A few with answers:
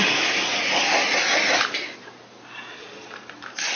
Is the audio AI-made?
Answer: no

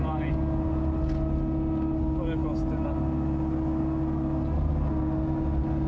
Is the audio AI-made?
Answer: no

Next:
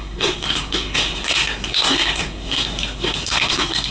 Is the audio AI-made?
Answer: yes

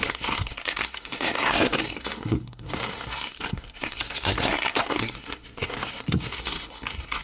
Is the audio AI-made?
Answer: yes